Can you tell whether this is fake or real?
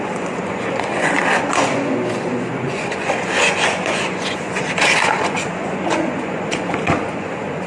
fake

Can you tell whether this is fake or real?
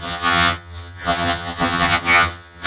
fake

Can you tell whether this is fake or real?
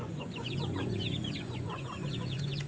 fake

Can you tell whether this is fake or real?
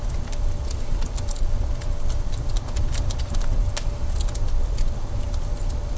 real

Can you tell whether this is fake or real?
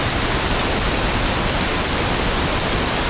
real